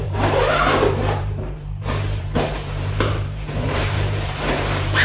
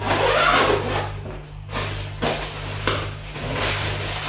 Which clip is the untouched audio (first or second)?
second